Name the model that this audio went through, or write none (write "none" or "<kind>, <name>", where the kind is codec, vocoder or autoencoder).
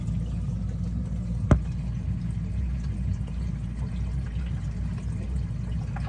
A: none